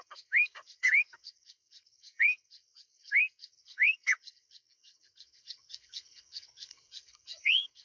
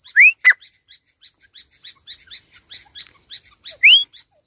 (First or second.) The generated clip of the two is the first